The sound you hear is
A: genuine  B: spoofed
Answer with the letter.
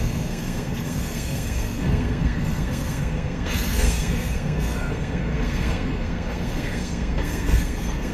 B